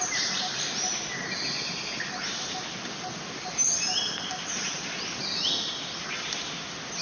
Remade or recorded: recorded